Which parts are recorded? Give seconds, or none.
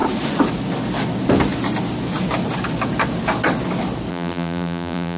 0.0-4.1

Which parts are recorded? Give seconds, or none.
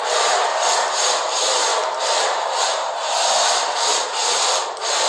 0.5-1.1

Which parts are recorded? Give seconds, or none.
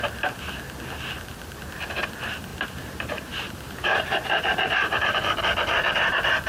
0.0-2.5; 5.4-6.5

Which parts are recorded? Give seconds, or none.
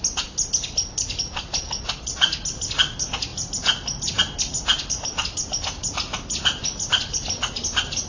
0.0-8.1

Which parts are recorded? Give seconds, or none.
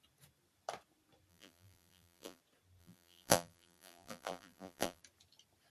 0.0-1.3; 2.4-2.8; 5.0-5.7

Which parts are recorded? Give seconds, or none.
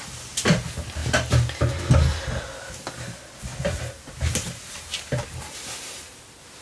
0.0-3.5; 5.2-6.6